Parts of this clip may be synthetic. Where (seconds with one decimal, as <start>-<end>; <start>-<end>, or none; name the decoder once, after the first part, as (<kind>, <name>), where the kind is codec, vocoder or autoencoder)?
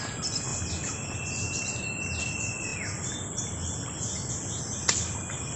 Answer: 0.5-2.2 (vocoder, BigVGAN v2)